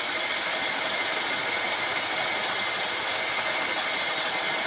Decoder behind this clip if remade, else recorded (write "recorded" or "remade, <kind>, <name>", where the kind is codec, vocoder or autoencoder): recorded